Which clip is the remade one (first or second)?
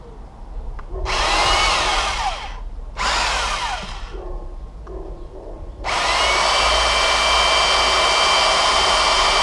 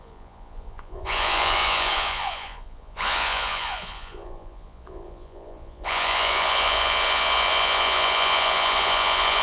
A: second